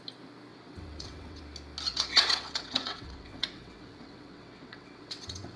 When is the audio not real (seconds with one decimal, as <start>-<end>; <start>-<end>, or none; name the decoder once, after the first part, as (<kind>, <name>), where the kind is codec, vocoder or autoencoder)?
0.5-1.4 (vocoder, WaveNeXt); 1.9-5.6